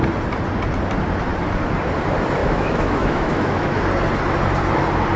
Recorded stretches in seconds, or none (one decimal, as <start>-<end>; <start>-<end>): 0.0-2.4; 3.8-5.2